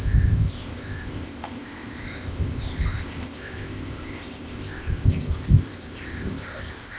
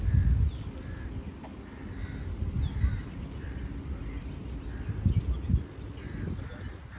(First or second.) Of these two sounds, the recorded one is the second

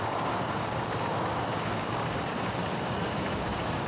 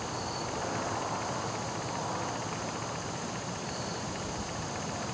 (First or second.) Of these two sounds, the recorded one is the second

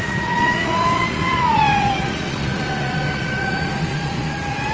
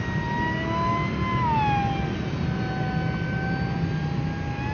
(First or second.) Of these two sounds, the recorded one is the second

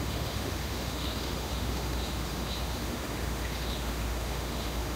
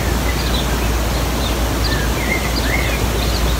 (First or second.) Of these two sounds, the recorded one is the second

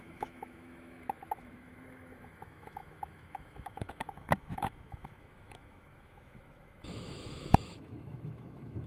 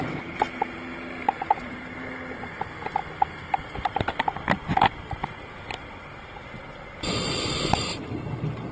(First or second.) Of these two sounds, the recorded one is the second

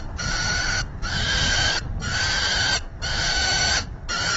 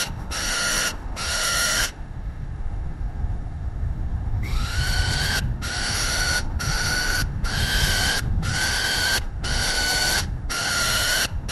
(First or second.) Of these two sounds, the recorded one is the first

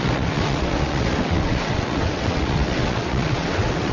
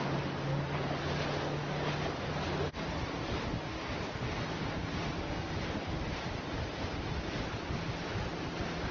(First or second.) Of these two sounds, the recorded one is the second